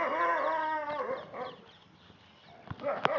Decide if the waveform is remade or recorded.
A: recorded